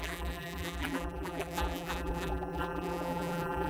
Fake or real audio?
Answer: fake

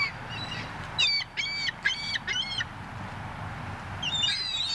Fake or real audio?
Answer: real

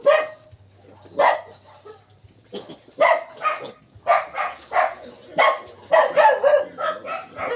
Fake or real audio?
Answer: real